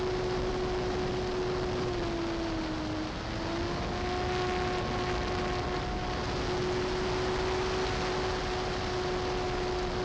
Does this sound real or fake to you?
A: real